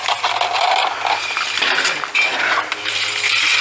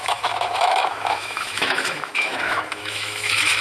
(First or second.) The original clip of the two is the first